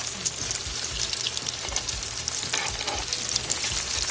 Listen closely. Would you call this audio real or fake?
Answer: real